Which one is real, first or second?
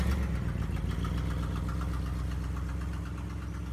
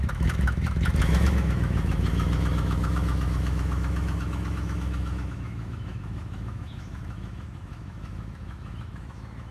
first